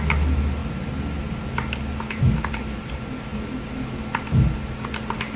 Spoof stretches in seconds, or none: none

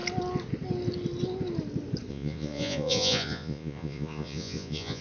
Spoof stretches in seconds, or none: 2.1-5.0 (vocoder, Vocos)

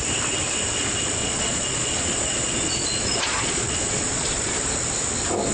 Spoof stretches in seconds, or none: 1.2-4.5 (vocoder, Vocos)

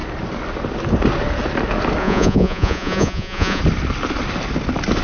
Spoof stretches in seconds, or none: 2.0-3.6 (vocoder, Vocos)